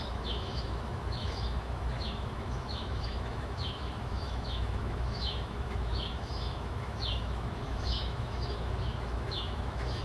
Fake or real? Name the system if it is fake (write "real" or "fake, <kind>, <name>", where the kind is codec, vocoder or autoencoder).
fake, autoencoder, DAC-VAE